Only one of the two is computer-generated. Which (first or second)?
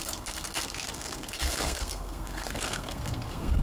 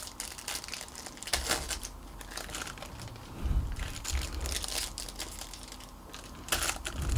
first